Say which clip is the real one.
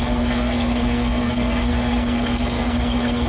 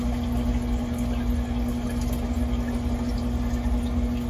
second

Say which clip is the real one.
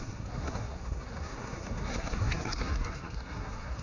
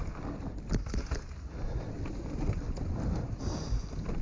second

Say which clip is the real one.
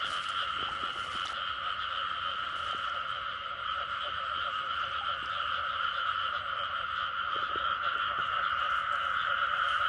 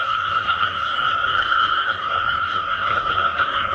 first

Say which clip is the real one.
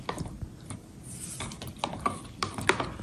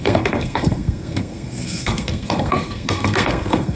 first